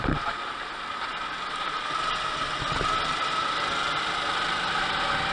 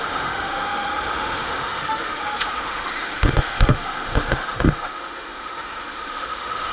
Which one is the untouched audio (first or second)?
first